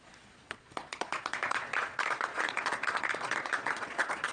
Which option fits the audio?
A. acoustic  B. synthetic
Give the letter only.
B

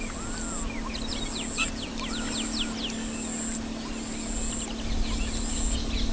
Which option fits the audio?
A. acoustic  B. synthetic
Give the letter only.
A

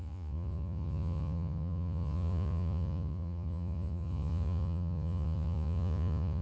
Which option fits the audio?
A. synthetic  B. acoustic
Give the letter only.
A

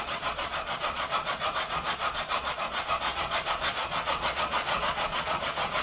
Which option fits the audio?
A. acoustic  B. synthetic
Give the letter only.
B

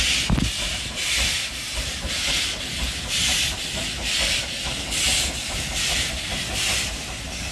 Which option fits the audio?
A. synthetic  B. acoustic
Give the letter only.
B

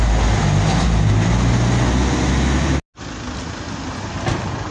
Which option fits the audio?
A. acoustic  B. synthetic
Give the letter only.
A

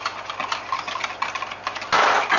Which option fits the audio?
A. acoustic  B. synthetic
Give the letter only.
A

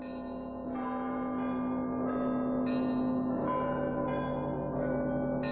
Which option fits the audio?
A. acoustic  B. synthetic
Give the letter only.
A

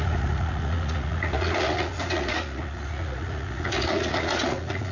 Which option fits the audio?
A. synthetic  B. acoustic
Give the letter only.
A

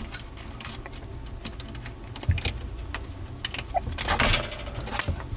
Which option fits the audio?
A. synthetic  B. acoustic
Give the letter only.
B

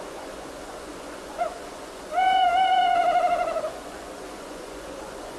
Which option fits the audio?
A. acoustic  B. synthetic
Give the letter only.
B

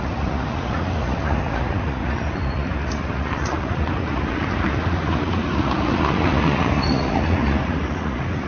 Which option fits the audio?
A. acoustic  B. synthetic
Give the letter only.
B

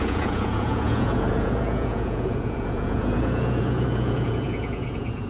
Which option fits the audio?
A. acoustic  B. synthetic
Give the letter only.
B